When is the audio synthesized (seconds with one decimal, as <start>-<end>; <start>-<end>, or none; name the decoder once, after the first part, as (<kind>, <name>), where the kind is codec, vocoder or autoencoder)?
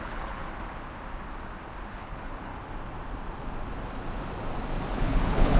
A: 0.0-0.4 (codec, HILCodec); 1.9-2.5; 4.9-5.6